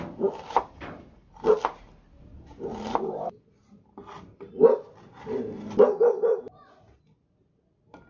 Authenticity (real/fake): real